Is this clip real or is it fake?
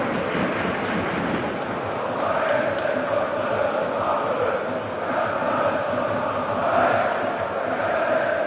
real